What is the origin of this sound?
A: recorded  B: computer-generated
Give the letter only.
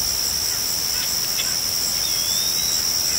A